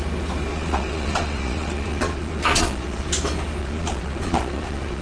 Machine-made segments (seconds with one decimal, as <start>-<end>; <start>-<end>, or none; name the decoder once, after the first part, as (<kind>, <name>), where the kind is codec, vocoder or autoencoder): 0.5-3.1 (vocoder, Vocos); 3.6-5.0